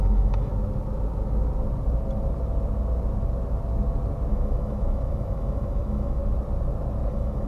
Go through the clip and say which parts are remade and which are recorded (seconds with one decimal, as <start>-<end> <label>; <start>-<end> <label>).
0.0-0.5 remade; 0.5-4.3 recorded; 4.3-6.2 remade; 6.2-7.1 recorded; 7.1-7.5 remade